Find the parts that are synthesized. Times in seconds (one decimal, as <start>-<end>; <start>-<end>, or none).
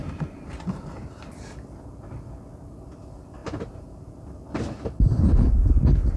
3.4-4.1